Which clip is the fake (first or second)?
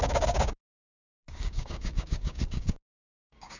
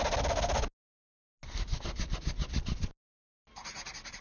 first